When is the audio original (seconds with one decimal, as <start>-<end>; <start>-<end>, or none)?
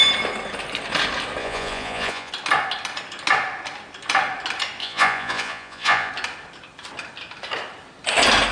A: 0.0-1.4; 2.3-4.8; 6.1-8.5